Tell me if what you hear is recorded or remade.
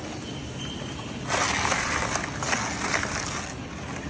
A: recorded